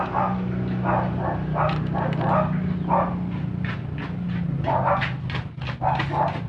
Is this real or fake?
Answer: real